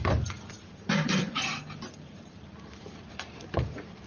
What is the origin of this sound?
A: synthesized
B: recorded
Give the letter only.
A